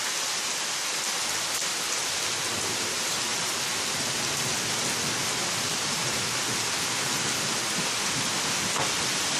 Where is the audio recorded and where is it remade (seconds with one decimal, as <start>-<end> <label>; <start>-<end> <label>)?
0.0-9.4 recorded